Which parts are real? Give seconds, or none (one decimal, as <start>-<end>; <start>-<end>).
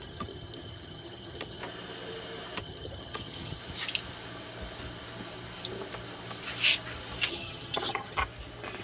1.6-2.6; 3.6-7.3; 8.2-8.8